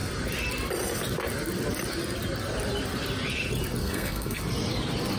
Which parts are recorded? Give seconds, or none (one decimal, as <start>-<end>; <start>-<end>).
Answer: 0.0-3.8; 4.4-5.2